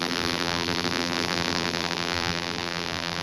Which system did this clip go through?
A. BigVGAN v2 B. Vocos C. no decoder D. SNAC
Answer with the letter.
A